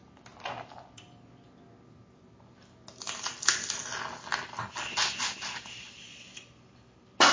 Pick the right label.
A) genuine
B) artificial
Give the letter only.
A